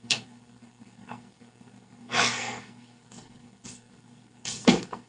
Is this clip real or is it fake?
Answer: fake